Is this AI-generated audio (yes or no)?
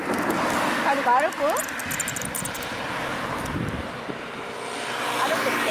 no